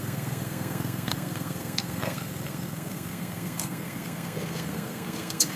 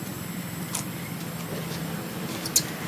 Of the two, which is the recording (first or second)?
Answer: second